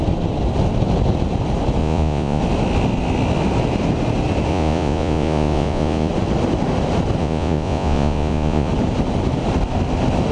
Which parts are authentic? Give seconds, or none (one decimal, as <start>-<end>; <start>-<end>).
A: 0.0-1.8; 2.4-4.5; 6.1-7.2; 8.7-10.3